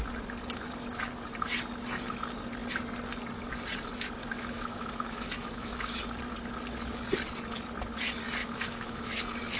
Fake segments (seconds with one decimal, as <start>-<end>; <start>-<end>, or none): 4.2-6.0; 8.4-9.2